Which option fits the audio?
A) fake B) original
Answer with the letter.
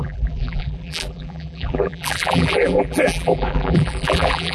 A